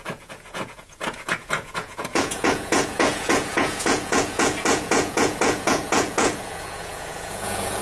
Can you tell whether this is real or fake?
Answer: fake